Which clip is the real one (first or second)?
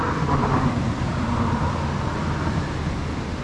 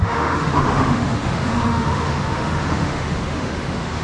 first